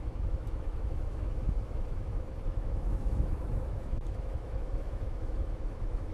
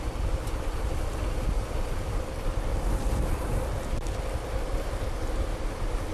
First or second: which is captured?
second